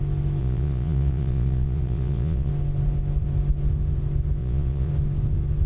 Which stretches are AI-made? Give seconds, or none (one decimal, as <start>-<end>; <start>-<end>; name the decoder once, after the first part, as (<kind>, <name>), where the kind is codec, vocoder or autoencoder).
0.4-2.5 (vocoder, Vocos); 4.4-4.9

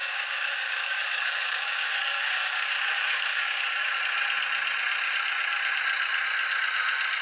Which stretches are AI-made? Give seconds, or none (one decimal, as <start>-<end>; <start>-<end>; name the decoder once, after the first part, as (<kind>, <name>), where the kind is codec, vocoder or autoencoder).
0.0-4.0 (codec, DAC)

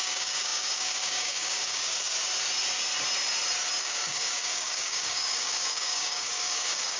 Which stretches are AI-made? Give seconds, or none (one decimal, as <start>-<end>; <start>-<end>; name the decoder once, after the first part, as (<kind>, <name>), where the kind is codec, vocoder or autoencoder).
0.0-2.1 (codec, DAC); 3.8-7.0